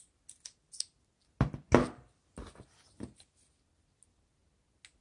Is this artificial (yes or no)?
no